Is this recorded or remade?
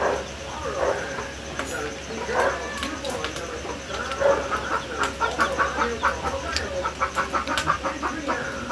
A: recorded